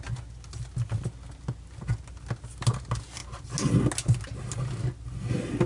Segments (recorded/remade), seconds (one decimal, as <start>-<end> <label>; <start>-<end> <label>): 0.0-5.7 recorded